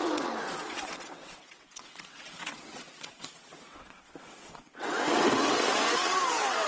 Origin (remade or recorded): remade